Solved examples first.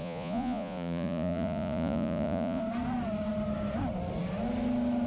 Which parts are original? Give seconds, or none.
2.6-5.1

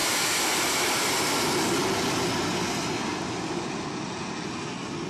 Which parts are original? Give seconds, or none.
0.0-5.1